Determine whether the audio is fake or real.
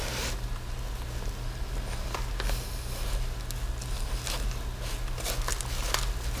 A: real